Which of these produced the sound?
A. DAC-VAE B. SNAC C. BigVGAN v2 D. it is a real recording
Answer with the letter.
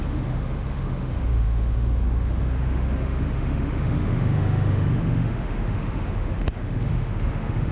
A